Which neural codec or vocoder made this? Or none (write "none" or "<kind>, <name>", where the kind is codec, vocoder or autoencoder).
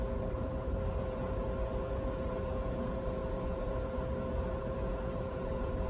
vocoder, Vocos